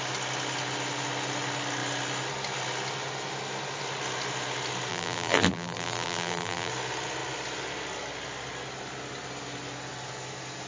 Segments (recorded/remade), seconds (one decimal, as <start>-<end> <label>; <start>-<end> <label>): 0.0-4.9 recorded; 4.9-6.7 remade; 6.7-10.7 recorded